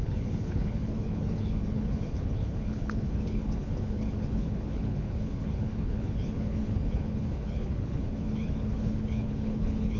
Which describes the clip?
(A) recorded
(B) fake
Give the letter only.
B